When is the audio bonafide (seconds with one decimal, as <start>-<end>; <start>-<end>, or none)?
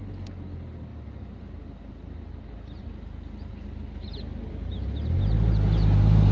0.0-6.3